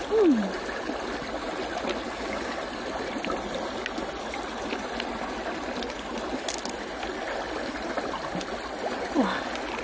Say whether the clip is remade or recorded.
recorded